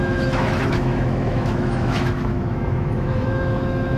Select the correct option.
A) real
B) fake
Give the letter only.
B